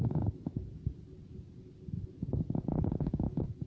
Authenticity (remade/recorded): recorded